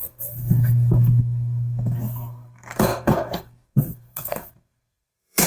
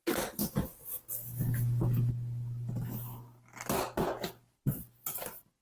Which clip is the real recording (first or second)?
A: second